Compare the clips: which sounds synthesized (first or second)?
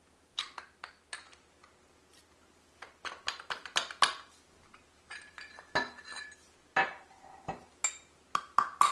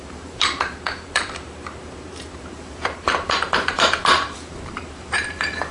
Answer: second